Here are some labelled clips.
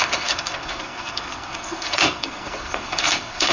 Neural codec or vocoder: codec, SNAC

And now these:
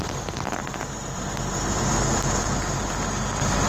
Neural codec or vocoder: none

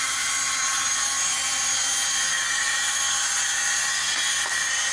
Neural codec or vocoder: none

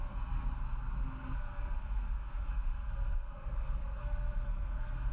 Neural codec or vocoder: codec, SNAC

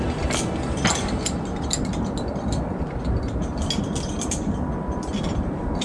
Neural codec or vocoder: none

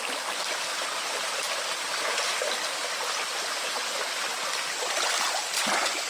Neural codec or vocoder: none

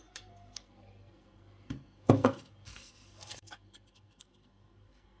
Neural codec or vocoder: codec, SNAC